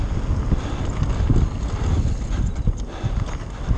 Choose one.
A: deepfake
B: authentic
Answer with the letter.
B